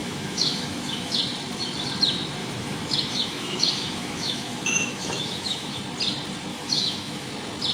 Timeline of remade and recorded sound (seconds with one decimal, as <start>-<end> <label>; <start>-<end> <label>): 0.0-1.2 remade; 1.2-2.4 recorded; 2.4-5.8 remade; 5.8-6.5 recorded; 6.5-7.3 remade; 7.3-7.7 recorded